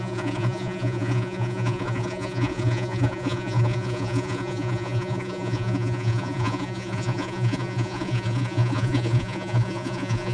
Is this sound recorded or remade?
remade